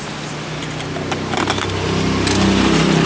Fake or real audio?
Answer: real